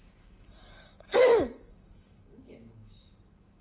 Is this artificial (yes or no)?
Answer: yes